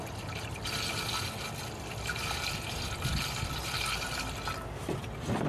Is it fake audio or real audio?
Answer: real